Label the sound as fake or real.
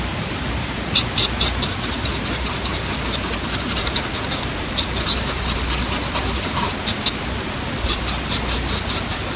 real